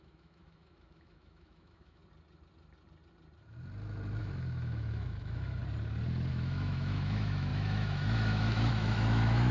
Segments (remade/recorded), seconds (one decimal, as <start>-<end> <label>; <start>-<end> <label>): 0.0-2.0 remade; 2.0-4.2 recorded; 4.2-5.6 remade; 5.6-6.3 recorded; 6.3-9.5 remade